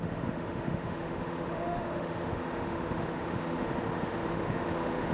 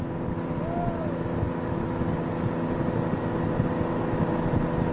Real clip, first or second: second